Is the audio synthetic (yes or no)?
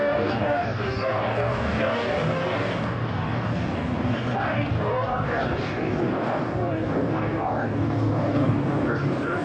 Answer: yes